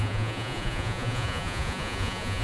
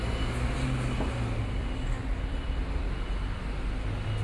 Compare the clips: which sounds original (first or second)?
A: second